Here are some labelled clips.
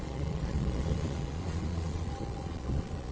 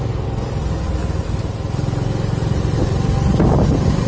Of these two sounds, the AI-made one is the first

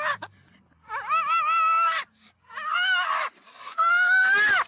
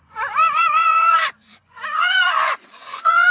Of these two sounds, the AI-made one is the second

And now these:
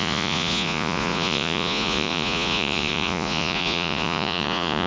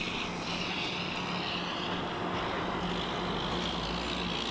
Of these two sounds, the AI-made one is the first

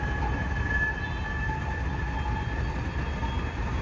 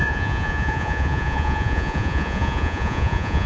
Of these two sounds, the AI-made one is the second